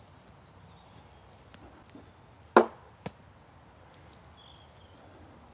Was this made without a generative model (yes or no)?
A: yes